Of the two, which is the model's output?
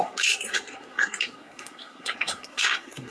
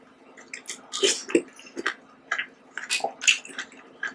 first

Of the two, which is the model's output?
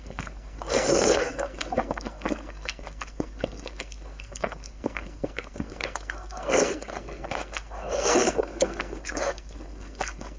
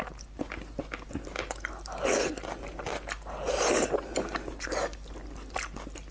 first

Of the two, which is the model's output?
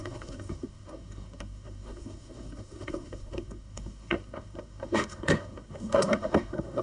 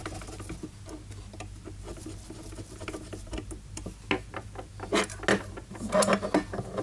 first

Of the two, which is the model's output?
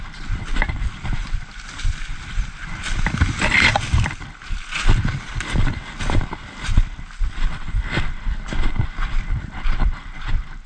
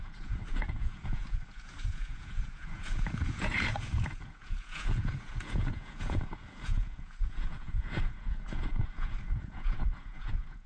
second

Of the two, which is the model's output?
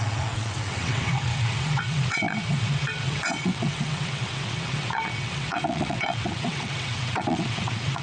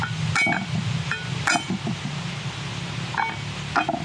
first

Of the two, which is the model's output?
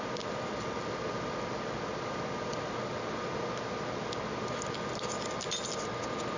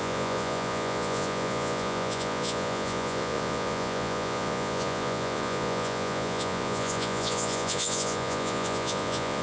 second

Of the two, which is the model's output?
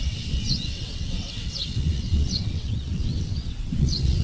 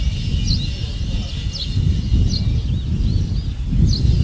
first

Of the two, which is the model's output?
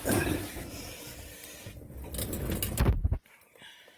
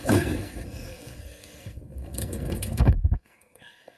second